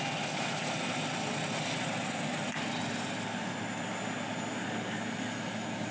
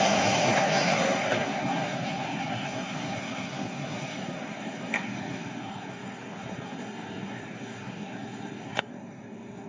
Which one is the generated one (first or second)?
second